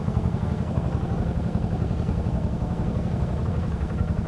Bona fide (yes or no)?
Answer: no